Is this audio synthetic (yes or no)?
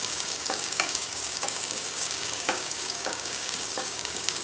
yes